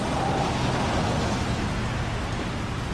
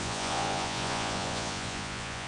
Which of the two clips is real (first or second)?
first